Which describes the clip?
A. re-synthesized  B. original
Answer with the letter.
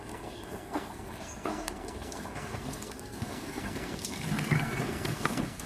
A